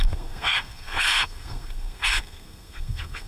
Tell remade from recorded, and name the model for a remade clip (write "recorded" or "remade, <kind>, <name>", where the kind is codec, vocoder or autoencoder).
remade, codec, SNAC